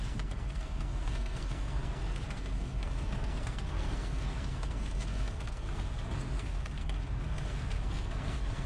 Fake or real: fake